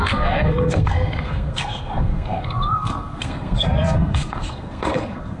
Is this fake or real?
fake